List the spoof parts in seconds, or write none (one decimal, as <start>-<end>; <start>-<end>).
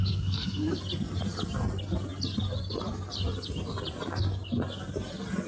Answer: 0.0-0.8